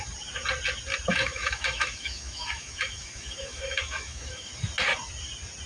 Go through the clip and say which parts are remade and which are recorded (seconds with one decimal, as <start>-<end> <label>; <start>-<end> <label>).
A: 0.0-1.1 recorded; 1.1-4.5 remade; 4.5-5.7 recorded